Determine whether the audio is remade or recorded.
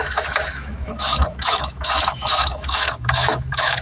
remade